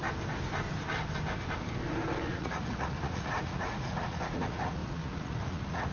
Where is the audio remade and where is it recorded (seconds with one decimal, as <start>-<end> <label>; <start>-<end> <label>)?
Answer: 0.0-2.3 recorded; 2.3-5.9 remade